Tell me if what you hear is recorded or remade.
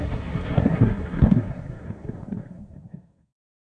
remade